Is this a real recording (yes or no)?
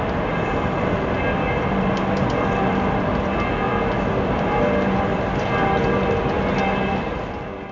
yes